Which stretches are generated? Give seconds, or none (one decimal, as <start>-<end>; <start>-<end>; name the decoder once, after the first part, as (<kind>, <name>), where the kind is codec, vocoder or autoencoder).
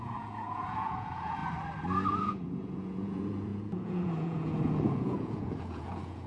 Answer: 0.0-1.4 (vocoder, Vocos); 2.1-6.3